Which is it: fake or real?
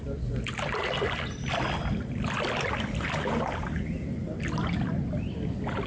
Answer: real